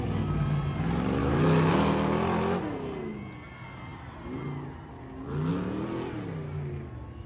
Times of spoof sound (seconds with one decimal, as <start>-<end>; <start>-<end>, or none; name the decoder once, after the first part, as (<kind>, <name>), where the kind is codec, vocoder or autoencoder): 1.2-1.7 (autoencoder, DAC-VAE)